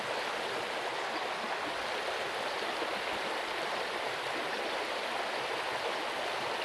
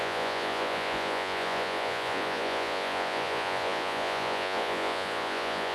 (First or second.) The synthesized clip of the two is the second